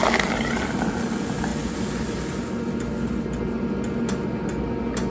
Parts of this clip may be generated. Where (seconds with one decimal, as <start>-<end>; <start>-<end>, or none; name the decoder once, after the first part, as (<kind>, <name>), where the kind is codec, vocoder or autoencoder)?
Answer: none